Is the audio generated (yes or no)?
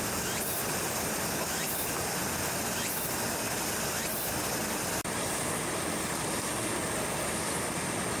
no